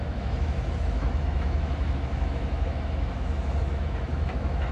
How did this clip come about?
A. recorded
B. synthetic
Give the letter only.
B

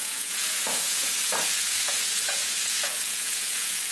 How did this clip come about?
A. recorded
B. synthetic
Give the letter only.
B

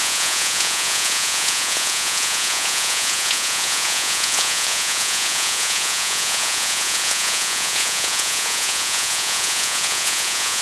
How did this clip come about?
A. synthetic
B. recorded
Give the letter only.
A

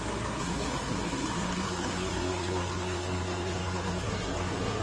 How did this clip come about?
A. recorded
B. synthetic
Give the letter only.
B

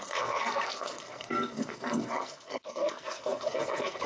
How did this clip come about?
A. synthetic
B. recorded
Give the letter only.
A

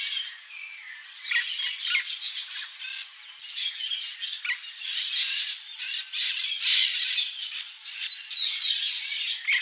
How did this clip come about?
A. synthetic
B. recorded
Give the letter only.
B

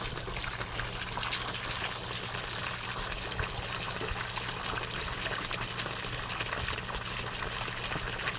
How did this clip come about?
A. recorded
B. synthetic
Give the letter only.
A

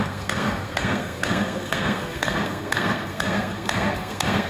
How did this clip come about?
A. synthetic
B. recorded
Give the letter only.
A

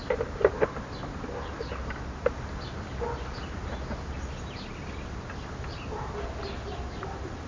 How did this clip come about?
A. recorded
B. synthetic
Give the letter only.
A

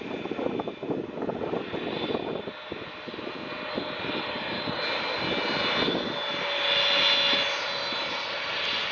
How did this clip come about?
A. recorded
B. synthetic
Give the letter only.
A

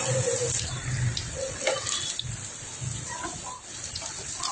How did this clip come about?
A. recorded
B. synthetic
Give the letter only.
A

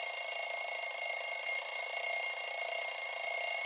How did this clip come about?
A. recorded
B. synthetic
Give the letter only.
A